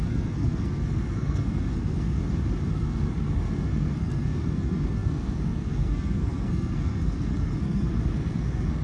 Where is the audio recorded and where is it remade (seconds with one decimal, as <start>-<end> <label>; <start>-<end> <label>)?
0.0-2.2 remade; 2.2-2.7 recorded; 2.7-8.8 remade